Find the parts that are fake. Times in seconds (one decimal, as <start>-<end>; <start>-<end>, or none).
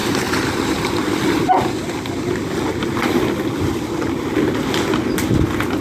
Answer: 0.0-2.5